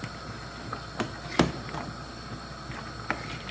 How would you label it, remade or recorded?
recorded